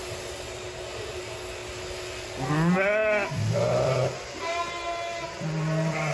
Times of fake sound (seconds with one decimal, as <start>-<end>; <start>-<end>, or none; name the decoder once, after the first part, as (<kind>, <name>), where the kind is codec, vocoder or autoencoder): none